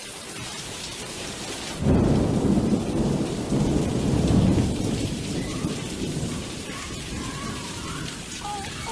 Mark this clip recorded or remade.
remade